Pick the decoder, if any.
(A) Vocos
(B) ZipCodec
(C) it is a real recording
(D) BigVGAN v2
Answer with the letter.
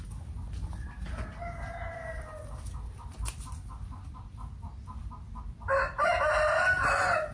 C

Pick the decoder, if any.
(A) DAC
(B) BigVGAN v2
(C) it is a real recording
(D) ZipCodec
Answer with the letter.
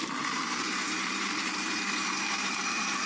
B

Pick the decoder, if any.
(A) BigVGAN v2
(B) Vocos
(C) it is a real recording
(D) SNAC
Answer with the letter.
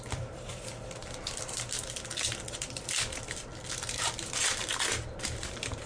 A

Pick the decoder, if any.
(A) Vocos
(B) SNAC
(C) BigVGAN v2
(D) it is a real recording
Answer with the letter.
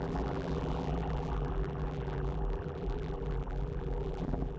C